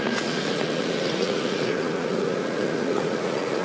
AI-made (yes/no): yes